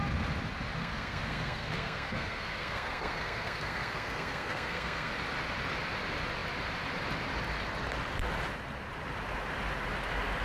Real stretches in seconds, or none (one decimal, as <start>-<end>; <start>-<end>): 0.0-0.8; 5.1-10.4